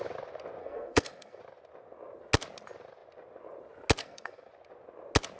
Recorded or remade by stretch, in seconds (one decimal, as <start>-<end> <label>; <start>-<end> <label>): 0.0-0.6 recorded; 0.6-1.4 remade; 1.4-4.0 recorded; 4.0-4.5 remade; 4.5-5.4 recorded